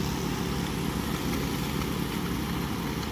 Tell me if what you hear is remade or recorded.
recorded